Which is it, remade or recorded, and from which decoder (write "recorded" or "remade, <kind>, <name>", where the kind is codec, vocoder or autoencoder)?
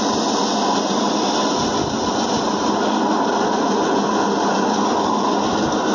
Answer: recorded